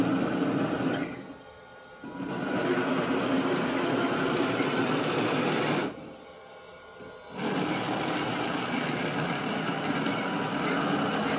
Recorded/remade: recorded